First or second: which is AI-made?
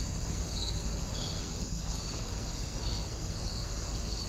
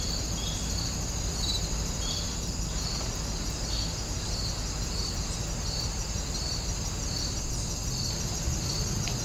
first